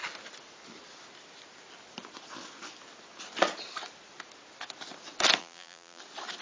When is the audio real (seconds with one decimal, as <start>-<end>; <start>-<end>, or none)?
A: 0.0-5.4; 6.0-6.4